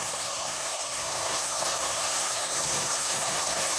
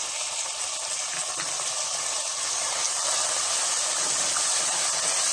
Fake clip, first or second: first